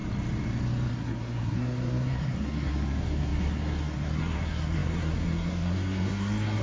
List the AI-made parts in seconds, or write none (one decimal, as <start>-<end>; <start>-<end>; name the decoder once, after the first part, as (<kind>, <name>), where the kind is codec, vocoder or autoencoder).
0.9-6.6 (codec, SNAC)